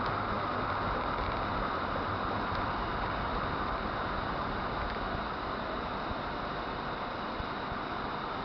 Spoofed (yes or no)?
no